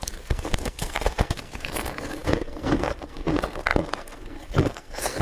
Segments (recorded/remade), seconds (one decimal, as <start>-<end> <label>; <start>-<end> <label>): 0.0-5.2 remade